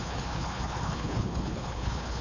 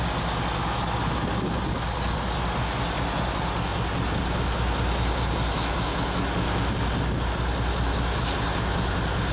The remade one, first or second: first